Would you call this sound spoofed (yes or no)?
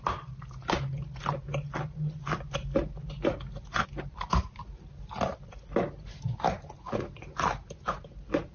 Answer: no